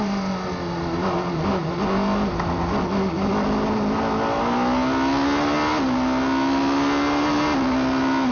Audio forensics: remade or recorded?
recorded